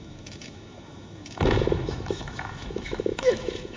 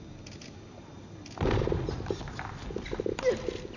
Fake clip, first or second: first